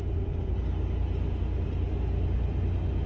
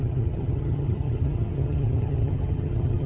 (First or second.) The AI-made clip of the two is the second